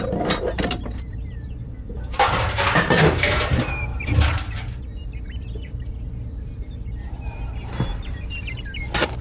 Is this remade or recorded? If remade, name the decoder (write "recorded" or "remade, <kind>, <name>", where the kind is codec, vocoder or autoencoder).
remade, vocoder, BigVGAN v2